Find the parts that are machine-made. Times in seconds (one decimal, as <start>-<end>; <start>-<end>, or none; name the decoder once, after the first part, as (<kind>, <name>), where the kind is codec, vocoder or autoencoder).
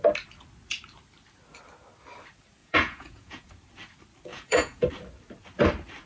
2.6-3.5 (vocoder, Vocos); 4.3-4.9